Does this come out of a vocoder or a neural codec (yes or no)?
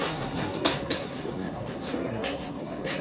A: yes